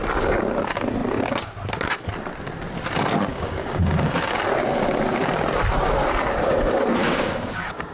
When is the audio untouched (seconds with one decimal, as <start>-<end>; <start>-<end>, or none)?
0.0-3.3; 4.4-7.0